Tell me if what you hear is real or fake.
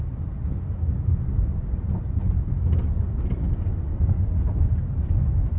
real